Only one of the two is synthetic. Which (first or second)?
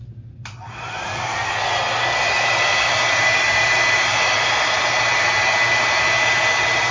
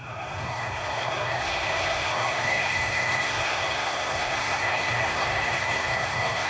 second